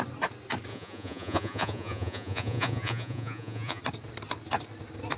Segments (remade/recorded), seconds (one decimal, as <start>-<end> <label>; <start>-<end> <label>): 0.0-0.7 recorded; 0.7-3.8 remade; 3.8-5.2 recorded